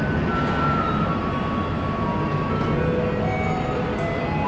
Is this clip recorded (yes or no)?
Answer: yes